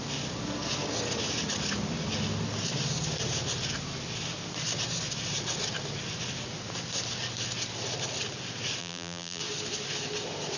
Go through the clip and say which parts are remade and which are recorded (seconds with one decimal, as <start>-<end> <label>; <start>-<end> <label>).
0.0-8.8 recorded; 8.8-9.4 remade; 9.4-10.6 recorded